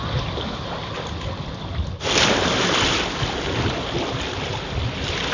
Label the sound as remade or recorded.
recorded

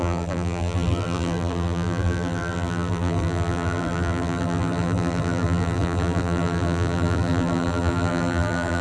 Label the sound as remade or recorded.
remade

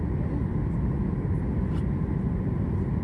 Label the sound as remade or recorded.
recorded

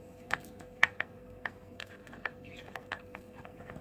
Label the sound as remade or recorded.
remade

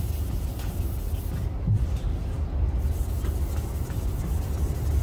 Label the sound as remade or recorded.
recorded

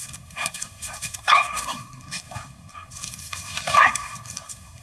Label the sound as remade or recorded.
remade